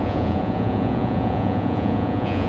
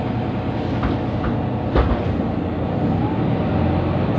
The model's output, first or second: first